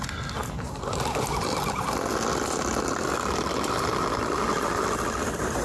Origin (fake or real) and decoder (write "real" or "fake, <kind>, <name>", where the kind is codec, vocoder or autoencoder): real